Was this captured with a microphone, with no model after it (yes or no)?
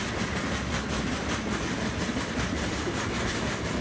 yes